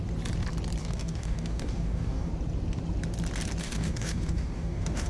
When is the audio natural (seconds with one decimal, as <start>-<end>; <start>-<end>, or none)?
0.0-0.8; 2.3-3.6